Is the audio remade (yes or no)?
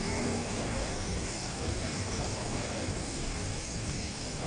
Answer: yes